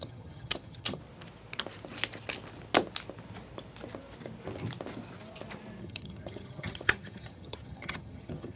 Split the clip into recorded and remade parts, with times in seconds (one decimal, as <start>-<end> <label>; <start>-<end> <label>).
0.0-1.0 remade; 1.0-5.8 recorded; 5.8-8.6 remade